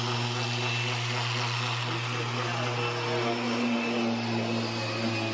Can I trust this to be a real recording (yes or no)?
yes